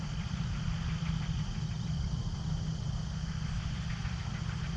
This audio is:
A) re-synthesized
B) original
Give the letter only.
B